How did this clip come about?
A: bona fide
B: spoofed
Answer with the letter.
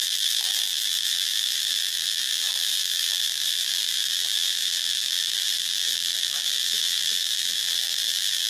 B